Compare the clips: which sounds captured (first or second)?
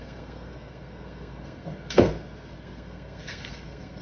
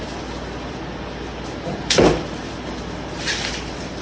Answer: second